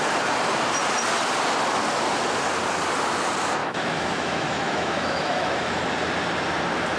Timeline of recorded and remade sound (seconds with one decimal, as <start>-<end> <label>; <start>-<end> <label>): 0.0-3.6 recorded; 3.6-5.8 remade; 5.8-7.0 recorded